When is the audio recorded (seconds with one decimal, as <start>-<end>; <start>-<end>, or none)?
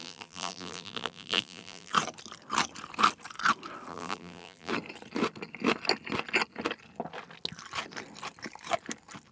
1.9-3.9; 4.7-9.3